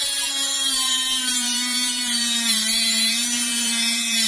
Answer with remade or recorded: remade